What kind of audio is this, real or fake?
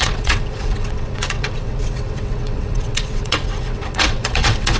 fake